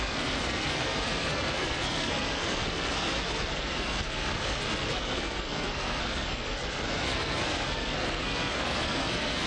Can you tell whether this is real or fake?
fake